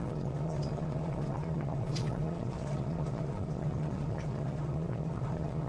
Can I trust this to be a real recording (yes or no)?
no